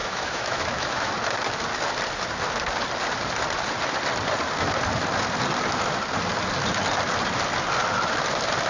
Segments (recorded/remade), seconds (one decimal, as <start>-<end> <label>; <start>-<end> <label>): 0.0-1.1 remade; 1.1-8.7 recorded